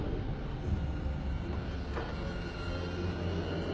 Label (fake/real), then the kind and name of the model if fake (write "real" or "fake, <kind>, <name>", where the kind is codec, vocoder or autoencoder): real